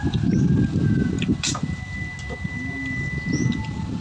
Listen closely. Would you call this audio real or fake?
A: real